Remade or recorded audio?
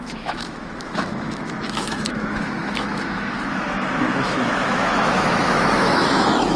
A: remade